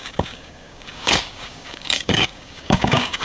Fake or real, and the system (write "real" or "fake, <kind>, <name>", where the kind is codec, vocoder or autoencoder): fake, codec, DAC